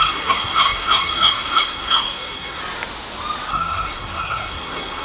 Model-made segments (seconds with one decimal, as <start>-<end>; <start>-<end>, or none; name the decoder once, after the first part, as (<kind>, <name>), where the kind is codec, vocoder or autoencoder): 0.0-2.6 (codec, SNAC); 3.5-5.0